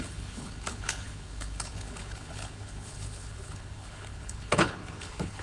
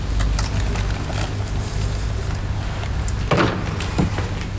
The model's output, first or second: first